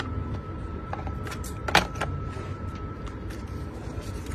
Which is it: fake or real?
fake